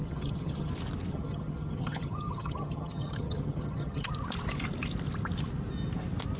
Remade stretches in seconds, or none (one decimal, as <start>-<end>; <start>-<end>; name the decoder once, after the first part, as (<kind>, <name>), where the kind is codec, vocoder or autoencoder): 0.0-0.7 (vocoder, HiFi-GAN); 1.1-4.1